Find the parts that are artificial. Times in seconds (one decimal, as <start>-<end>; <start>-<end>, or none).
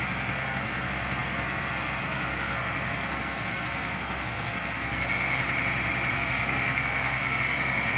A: 0.0-5.4; 6.1-8.0